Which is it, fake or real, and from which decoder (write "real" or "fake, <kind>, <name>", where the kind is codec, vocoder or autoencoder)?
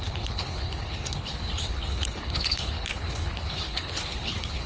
fake, codec, HILCodec